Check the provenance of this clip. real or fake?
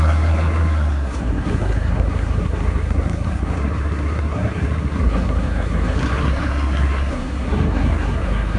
fake